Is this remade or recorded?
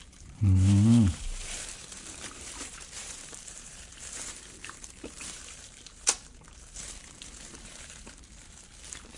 remade